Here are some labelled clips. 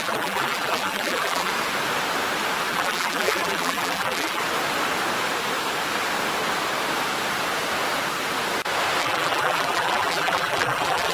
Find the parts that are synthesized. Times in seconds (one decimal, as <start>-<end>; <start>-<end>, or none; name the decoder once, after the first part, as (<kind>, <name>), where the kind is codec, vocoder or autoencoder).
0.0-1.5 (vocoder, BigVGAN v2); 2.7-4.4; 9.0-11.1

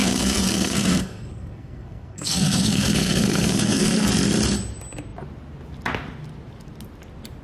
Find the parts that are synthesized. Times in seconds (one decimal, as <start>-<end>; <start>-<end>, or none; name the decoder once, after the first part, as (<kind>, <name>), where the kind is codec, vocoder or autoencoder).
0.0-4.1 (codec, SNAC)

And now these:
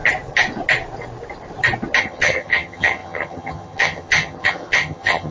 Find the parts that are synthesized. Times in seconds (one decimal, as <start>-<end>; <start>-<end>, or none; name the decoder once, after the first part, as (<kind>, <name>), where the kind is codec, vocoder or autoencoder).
2.0-5.3 (vocoder, HiFi-GAN)